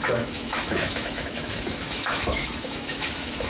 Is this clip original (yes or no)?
no